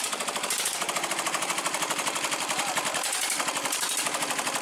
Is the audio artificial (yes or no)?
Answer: yes